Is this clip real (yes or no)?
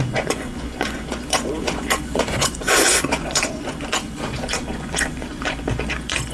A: no